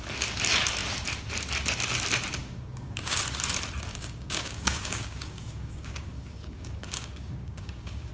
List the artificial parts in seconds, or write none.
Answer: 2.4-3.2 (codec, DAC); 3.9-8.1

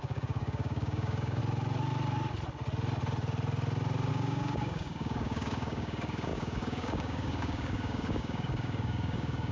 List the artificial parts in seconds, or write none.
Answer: 0.0-1.4 (codec, DAC); 4.1-9.5

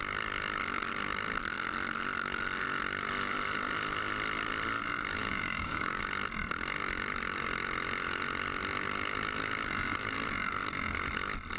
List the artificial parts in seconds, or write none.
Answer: 5.2-6.0 (codec, DAC)

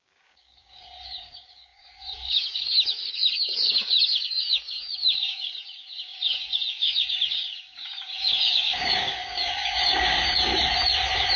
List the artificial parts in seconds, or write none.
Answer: 0.0-10.5 (codec, DAC)

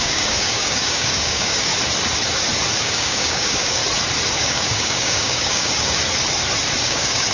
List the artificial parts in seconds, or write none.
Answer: 0.0-1.7 (codec, DAC); 2.8-3.8; 4.4-6.0; 6.8-7.3

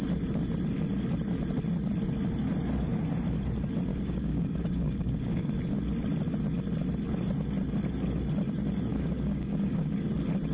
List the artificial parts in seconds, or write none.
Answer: 3.9-5.5 (codec, DAC); 8.9-10.1

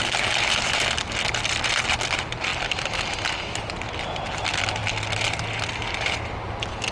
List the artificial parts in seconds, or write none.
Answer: none